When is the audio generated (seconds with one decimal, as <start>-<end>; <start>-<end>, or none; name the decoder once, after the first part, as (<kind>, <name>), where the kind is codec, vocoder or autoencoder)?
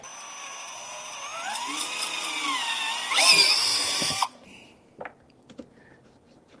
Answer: 3.7-5.4 (vocoder, BigVGAN v2)